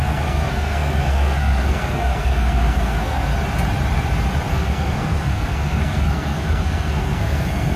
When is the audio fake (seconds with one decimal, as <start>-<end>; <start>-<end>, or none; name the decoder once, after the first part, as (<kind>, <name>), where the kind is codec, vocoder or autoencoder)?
0.0-3.3 (codec, SNAC); 4.5-7.8